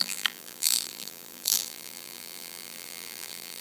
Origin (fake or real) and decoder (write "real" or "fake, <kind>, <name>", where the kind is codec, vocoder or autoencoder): fake, vocoder, BigVGAN v2